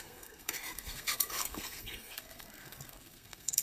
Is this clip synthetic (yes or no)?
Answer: yes